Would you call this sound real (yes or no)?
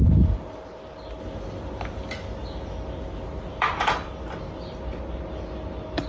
yes